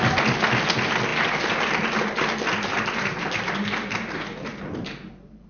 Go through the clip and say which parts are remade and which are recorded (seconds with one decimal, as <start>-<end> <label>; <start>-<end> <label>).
0.0-5.5 recorded

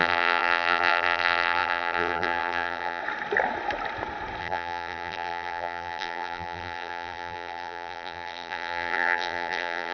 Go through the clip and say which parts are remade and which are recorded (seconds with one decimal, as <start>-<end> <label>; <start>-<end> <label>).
0.0-3.0 remade; 3.0-4.4 recorded; 4.4-9.9 remade

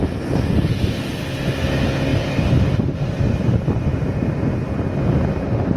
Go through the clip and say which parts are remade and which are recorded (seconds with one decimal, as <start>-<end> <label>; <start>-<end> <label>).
0.0-2.1 recorded; 2.1-4.7 remade; 4.7-5.8 recorded

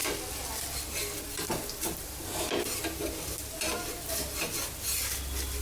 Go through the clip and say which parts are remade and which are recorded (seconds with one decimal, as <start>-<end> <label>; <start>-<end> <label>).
0.0-5.6 recorded

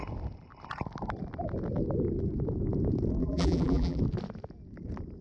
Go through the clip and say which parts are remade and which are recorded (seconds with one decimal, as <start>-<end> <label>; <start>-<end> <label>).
0.0-3.2 recorded; 3.2-4.0 remade; 4.0-5.2 recorded

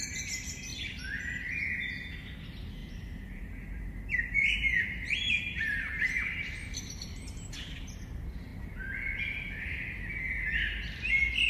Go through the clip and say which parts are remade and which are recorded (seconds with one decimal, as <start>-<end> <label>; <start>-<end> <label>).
0.0-2.8 recorded; 2.8-8.0 remade; 8.0-11.5 recorded